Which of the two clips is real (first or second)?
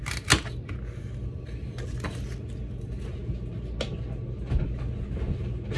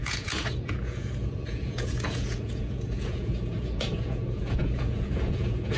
first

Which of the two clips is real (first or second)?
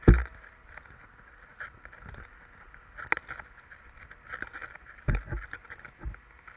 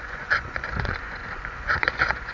first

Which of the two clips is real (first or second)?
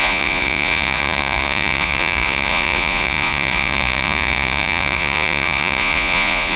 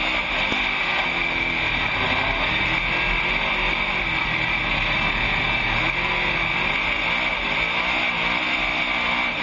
second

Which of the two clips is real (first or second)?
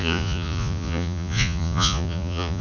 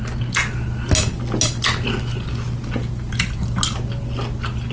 second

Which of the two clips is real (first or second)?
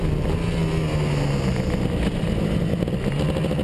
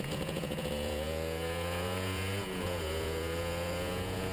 first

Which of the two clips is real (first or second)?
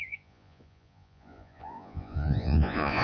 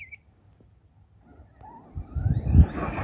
second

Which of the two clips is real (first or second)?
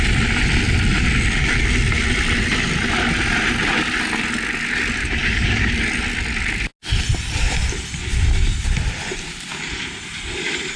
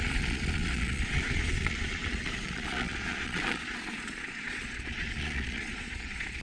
first